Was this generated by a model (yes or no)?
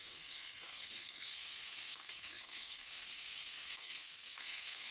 yes